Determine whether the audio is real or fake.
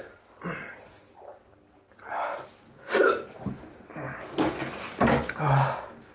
real